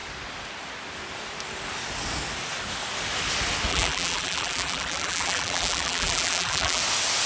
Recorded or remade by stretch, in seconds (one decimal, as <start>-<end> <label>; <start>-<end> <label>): 0.0-3.7 recorded; 3.7-6.8 remade; 6.8-7.3 recorded